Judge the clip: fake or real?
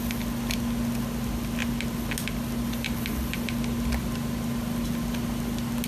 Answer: real